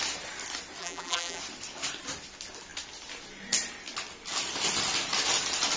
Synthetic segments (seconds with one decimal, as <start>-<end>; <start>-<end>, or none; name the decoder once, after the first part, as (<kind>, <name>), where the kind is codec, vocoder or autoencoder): 0.8-1.4 (vocoder, BigVGAN v2)